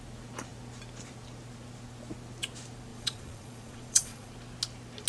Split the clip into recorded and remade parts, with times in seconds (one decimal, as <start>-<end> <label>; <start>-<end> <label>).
0.0-2.9 recorded; 2.9-4.3 remade; 4.3-5.1 recorded